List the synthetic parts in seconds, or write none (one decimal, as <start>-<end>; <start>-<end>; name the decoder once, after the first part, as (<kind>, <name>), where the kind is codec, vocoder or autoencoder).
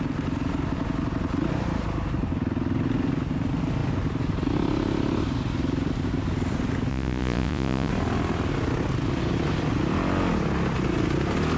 6.9-7.9 (vocoder, Vocos)